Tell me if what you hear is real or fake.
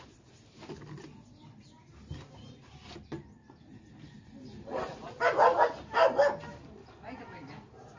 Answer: real